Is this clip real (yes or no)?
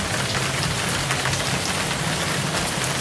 yes